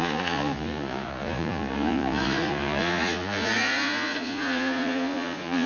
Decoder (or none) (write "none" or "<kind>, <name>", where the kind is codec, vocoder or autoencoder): vocoder, Vocos